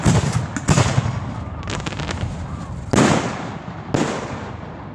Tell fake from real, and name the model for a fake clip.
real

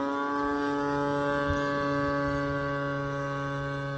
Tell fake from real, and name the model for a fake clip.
real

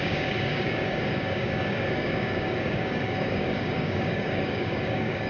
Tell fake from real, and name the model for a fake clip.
fake, codec, DAC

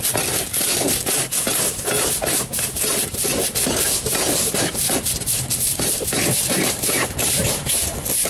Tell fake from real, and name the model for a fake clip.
fake, vocoder, BigVGAN v2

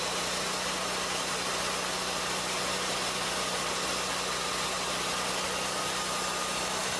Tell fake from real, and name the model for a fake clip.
real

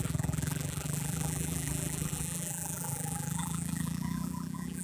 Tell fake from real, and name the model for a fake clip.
fake, vocoder, BigVGAN v2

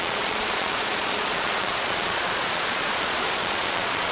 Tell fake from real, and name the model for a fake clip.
fake, vocoder, Vocos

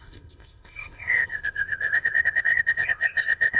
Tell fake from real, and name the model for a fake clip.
fake, codec, ZipCodec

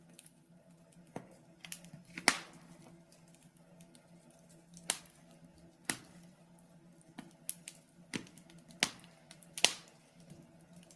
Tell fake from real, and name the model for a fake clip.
real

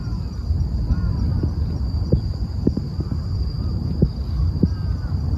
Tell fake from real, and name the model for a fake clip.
real